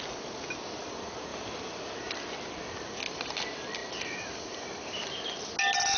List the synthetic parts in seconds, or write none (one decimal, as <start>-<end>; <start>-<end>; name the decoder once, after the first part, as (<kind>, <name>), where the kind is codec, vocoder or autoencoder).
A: none